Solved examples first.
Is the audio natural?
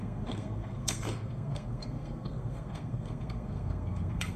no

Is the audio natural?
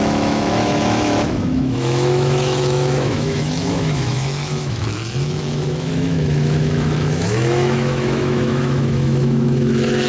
no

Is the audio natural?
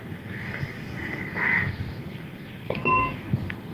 no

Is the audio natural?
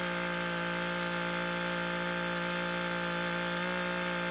yes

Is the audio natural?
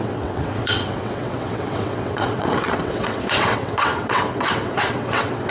no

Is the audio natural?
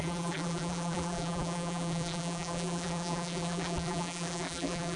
no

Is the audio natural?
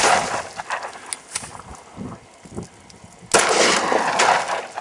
yes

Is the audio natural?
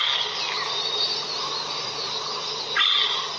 yes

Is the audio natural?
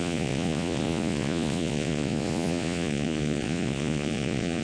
no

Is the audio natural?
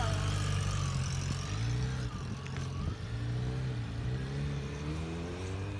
yes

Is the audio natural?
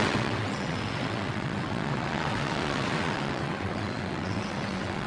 no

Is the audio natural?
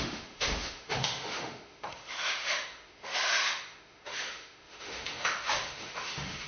no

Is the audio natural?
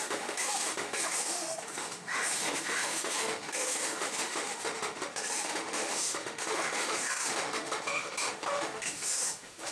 no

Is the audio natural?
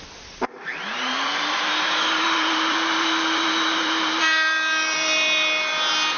no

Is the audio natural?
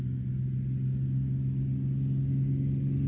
yes